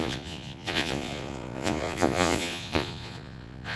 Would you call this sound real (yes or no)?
no